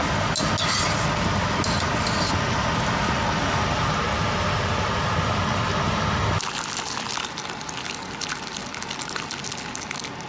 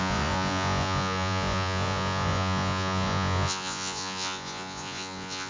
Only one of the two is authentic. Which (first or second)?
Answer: first